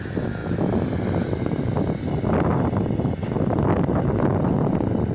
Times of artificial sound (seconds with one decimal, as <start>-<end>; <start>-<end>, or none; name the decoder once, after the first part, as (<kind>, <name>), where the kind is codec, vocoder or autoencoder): none